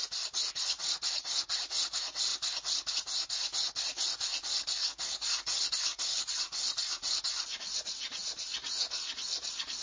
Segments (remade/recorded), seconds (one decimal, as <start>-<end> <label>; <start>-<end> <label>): 0.0-6.1 recorded; 6.1-7.1 remade; 7.1-9.8 recorded